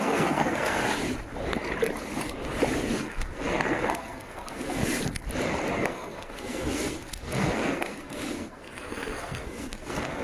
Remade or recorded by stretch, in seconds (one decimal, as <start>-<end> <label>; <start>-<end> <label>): 0.0-0.8 remade; 0.8-3.0 recorded; 3.0-4.8 remade; 4.8-5.7 recorded; 5.7-10.2 remade